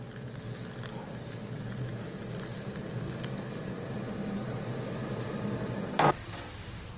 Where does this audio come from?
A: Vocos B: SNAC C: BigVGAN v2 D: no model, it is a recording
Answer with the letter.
D